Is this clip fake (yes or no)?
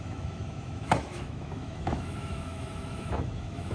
yes